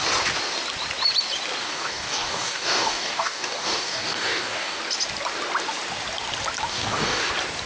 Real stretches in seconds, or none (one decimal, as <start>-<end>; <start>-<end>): 0.0-1.6; 4.8-6.7; 7.3-7.7